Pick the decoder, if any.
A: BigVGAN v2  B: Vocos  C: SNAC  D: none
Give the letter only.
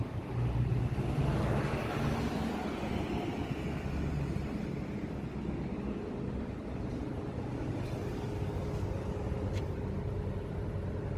D